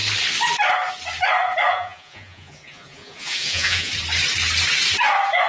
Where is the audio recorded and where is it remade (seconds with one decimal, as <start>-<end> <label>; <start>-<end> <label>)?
0.0-1.7 recorded; 1.7-3.9 remade; 3.9-5.5 recorded